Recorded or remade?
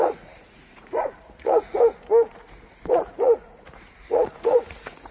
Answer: remade